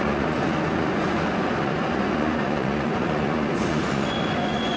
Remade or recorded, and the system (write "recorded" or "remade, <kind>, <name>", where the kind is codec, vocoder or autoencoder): remade, vocoder, Vocos